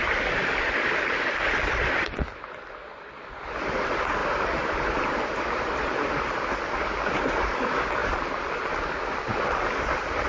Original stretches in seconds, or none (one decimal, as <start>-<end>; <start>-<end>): 0.0-10.3